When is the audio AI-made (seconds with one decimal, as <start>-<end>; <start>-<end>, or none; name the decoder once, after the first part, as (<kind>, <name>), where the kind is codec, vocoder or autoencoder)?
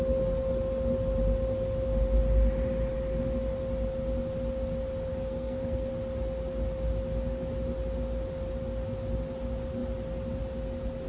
5.1-5.9 (codec, SNAC)